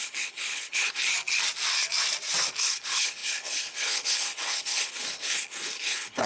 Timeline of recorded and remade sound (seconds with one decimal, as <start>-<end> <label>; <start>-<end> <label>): 0.0-1.1 remade; 1.1-2.6 recorded; 2.6-6.3 remade